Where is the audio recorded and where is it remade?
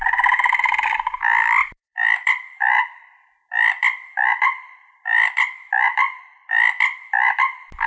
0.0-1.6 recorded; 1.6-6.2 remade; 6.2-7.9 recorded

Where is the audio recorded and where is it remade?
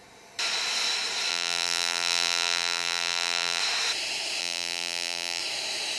0.0-1.3 recorded; 1.3-3.6 remade; 3.6-4.4 recorded; 4.4-5.4 remade; 5.4-6.0 recorded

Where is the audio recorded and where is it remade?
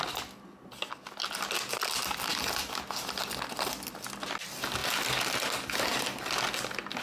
0.0-7.0 recorded